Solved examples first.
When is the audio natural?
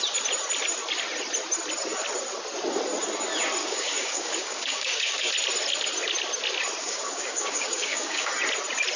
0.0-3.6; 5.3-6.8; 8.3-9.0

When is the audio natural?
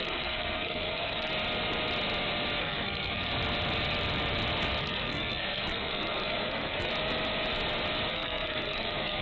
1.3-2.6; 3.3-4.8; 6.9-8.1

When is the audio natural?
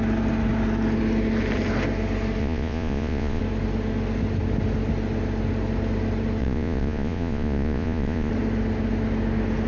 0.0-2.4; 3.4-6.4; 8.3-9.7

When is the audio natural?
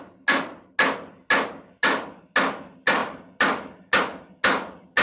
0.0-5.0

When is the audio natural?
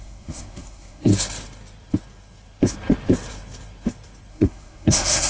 1.1-4.3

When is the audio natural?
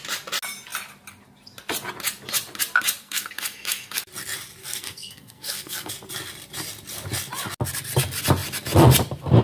0.0-3.0; 4.0-4.6; 5.9-9.4